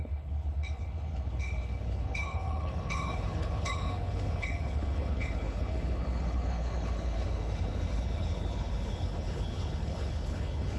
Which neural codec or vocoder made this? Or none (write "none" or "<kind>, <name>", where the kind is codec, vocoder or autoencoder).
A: codec, HILCodec